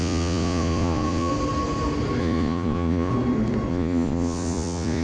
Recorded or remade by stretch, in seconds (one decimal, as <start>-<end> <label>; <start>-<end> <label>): 0.0-1.3 remade; 1.3-2.2 recorded; 2.2-3.1 remade; 3.1-3.7 recorded; 3.7-5.0 remade